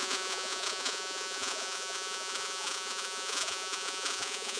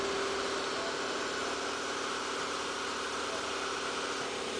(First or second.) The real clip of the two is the second